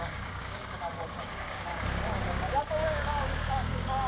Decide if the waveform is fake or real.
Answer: fake